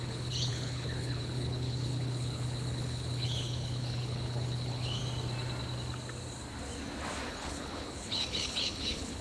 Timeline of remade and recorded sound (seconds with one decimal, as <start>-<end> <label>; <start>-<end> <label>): 0.0-5.0 remade; 5.0-7.3 recorded; 7.3-9.2 remade